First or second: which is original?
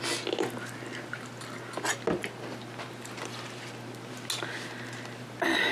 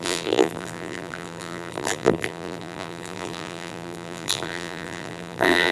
first